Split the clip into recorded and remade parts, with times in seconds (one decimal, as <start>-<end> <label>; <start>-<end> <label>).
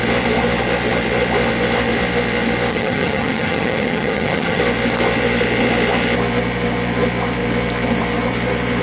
0.0-2.7 recorded; 2.7-4.6 remade; 4.6-8.8 recorded